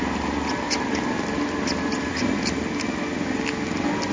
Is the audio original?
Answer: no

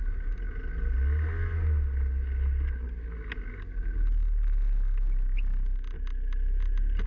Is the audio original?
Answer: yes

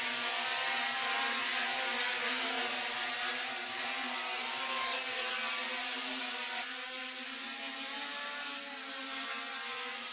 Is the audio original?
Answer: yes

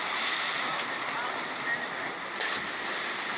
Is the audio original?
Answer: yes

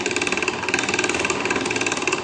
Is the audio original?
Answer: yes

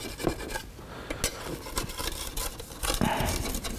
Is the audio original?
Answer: yes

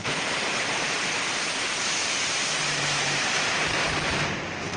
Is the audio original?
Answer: no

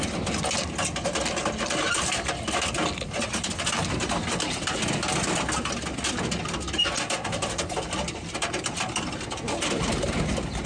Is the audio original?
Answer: yes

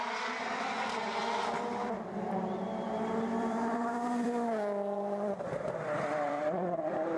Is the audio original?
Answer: no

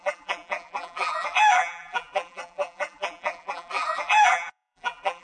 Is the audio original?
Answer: no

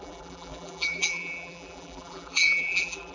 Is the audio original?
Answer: no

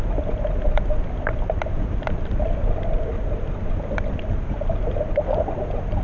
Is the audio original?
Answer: yes